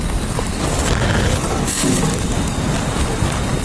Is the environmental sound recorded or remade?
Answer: recorded